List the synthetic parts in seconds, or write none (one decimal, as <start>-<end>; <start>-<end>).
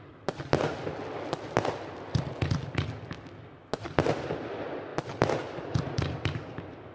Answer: none